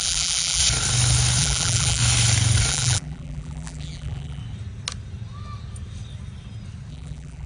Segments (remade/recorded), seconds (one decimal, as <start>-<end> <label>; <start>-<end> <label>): 0.0-0.6 remade; 0.6-1.4 recorded; 1.4-2.0 remade; 2.0-2.7 recorded; 2.7-4.4 remade; 4.4-6.9 recorded; 6.9-7.5 remade